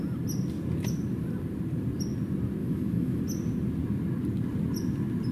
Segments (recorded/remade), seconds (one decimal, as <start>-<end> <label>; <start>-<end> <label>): 0.0-2.6 recorded; 2.6-3.2 remade; 3.2-5.3 recorded